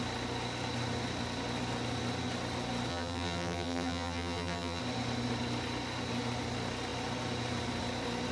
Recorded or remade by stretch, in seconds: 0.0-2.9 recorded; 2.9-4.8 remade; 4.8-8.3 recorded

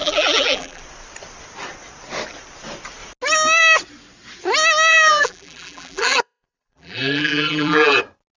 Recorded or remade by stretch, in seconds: 0.0-0.8 remade; 0.8-4.9 recorded; 4.9-8.0 remade; 8.0-8.4 recorded

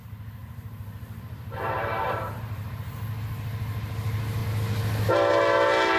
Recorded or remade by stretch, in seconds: 0.0-0.4 recorded; 0.4-2.8 remade; 2.8-6.0 recorded

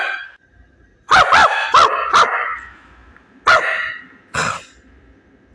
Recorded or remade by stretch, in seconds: 0.0-5.5 recorded

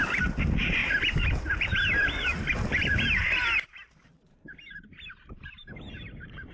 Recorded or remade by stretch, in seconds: 0.0-0.8 recorded; 0.8-1.7 remade; 1.7-2.3 recorded; 2.3-6.5 remade

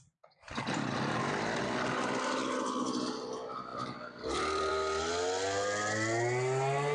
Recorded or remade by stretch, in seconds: 0.0-3.7 recorded; 3.7-4.7 remade; 4.7-6.9 recorded